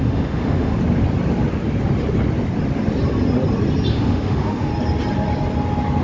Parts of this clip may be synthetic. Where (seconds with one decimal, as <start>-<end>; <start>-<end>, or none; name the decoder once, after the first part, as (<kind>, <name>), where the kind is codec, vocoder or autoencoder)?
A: 0.0-0.7 (autoencoder, DAC-VAE); 3.9-4.7